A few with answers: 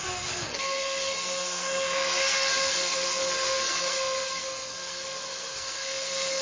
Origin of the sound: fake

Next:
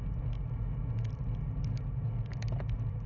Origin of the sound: real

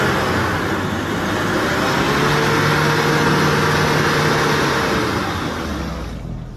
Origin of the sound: real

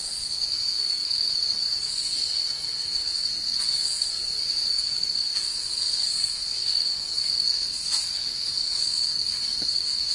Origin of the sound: fake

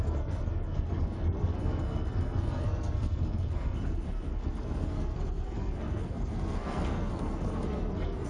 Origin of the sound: fake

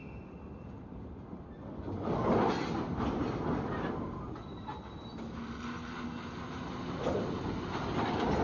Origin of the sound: real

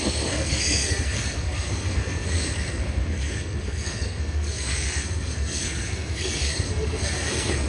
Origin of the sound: fake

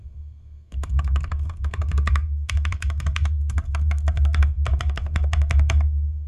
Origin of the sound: fake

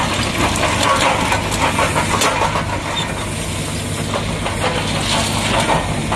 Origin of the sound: real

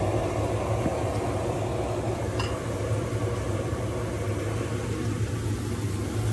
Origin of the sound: real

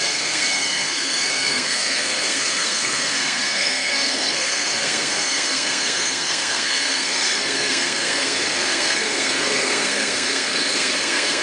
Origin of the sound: fake